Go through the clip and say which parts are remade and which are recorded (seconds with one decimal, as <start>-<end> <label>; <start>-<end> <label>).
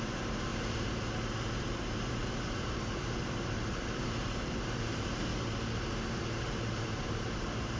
0.0-0.5 remade; 0.5-1.6 recorded; 1.6-5.3 remade; 5.3-6.6 recorded; 6.6-7.8 remade